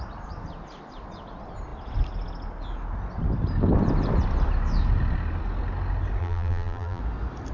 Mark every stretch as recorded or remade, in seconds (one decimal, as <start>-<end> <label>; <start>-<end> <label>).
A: 0.0-6.2 recorded; 6.2-7.0 remade; 7.0-7.5 recorded